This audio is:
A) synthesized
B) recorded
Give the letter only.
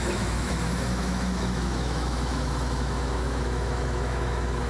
A